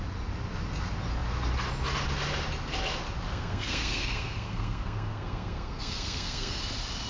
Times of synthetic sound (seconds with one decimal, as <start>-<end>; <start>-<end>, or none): 3.3-6.6